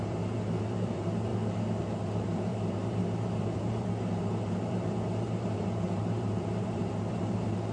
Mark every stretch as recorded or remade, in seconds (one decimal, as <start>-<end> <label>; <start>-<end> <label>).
0.0-1.3 remade; 1.3-1.8 recorded; 1.8-7.7 remade